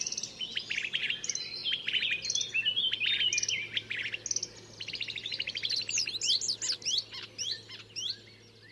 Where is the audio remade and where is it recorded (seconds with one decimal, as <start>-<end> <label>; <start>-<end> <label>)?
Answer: 0.0-8.7 recorded